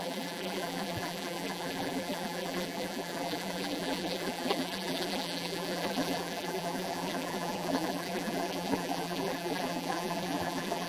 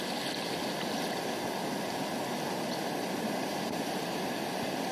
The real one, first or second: second